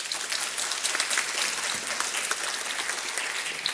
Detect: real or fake real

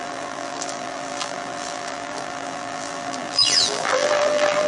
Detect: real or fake fake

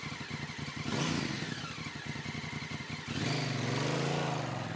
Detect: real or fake real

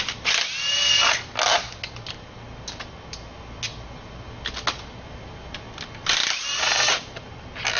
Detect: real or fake real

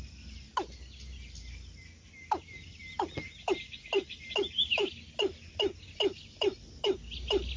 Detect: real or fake real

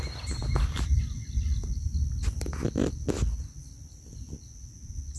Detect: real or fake real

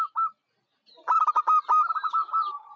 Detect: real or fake real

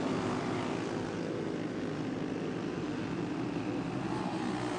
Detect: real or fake real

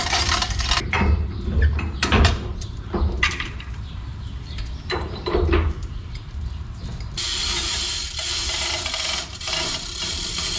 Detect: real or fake fake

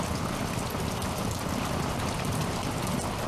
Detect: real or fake real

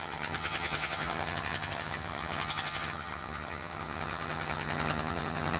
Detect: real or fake fake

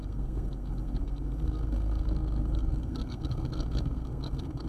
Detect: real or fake fake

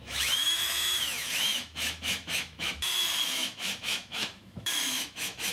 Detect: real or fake fake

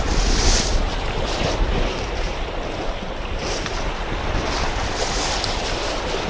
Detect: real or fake real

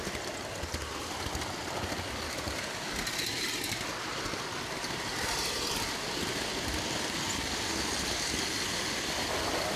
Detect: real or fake real